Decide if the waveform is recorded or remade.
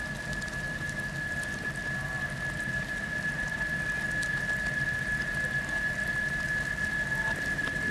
recorded